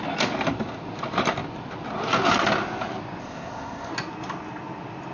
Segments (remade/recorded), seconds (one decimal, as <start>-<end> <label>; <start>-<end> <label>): 0.0-3.2 recorded; 3.2-3.9 remade; 3.9-5.1 recorded